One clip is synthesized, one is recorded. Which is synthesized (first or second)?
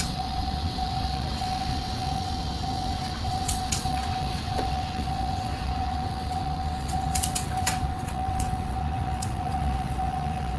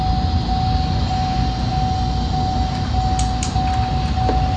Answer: first